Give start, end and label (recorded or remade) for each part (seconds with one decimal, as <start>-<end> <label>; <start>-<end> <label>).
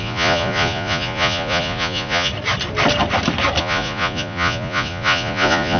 0.0-2.3 remade; 2.3-3.6 recorded; 3.6-5.8 remade